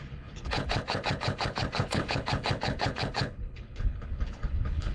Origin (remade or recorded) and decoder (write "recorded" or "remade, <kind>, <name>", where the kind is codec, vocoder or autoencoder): remade, codec, HILCodec